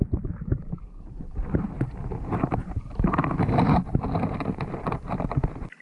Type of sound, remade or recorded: remade